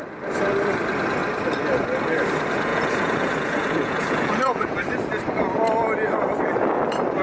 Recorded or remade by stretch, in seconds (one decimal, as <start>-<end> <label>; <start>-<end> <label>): 0.0-2.7 recorded; 2.7-5.1 remade; 5.1-7.2 recorded